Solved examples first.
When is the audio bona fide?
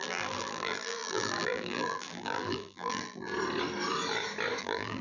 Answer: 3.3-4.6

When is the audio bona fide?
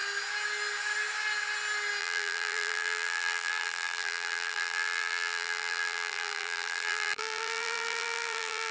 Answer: 0.0-2.0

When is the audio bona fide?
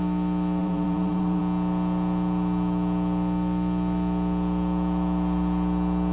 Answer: 0.0-0.6; 1.4-6.1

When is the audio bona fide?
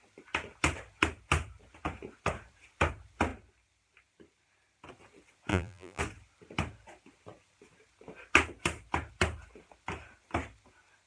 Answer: 0.0-5.5; 6.0-11.1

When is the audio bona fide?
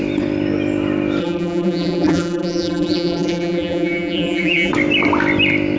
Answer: 0.0-1.2; 4.7-5.8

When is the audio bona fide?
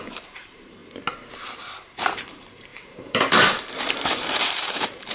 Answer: 0.8-2.3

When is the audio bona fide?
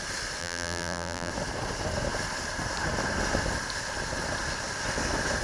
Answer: 0.0-0.4; 1.3-5.4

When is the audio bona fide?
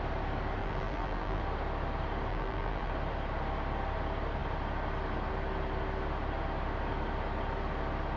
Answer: 0.0-0.6; 1.4-2.3; 2.9-8.2